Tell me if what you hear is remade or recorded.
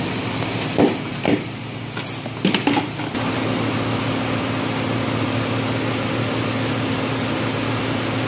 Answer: recorded